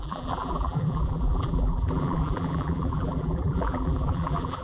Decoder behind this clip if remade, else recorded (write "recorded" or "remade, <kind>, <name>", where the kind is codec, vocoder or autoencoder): remade, vocoder, BigVGAN v2